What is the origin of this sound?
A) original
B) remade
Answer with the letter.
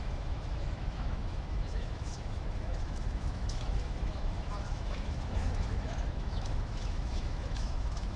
B